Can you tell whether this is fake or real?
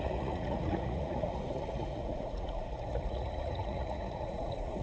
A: fake